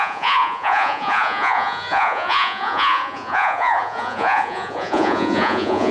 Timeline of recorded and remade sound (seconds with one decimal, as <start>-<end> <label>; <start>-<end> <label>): 0.0-5.9 remade